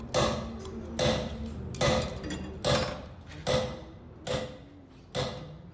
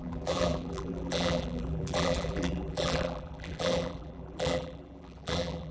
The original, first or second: first